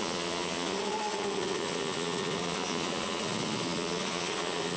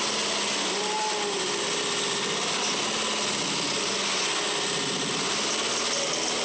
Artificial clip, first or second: first